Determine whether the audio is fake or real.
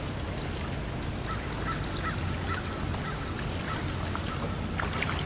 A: real